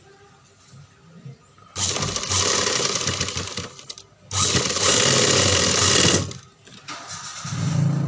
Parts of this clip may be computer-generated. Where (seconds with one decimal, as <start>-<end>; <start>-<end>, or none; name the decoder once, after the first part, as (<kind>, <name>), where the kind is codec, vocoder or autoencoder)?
none